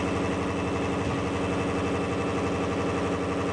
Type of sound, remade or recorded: recorded